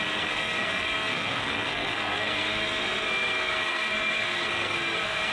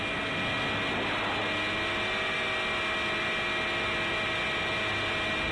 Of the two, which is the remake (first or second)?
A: first